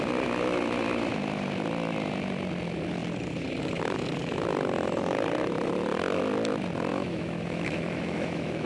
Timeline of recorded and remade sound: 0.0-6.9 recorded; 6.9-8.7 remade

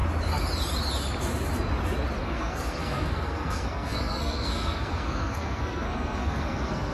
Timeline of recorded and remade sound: 0.0-2.2 recorded; 2.2-6.9 remade

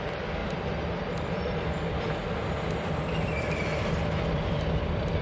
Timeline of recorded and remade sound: 0.0-0.4 recorded; 0.4-1.4 remade; 1.4-5.2 recorded

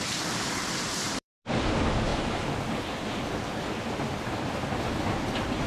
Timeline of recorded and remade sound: 0.0-2.1 remade; 2.1-5.7 recorded

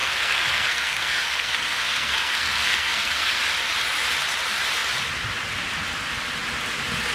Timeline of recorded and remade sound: 0.0-3.4 remade; 3.4-7.1 recorded

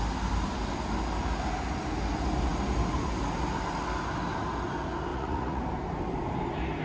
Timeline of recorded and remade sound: 0.0-5.1 recorded; 5.1-5.6 remade; 5.6-6.8 recorded

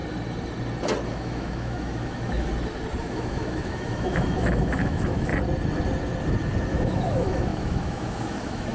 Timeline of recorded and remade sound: 0.0-1.1 recorded; 1.1-2.5 remade; 2.5-3.0 recorded; 3.0-5.3 remade; 5.3-6.7 recorded; 6.7-8.7 remade